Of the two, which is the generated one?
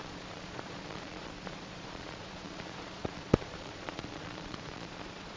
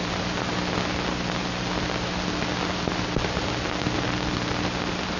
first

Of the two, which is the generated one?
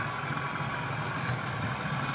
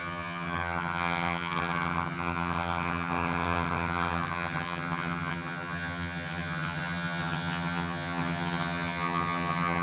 second